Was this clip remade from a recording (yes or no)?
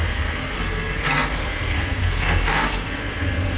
yes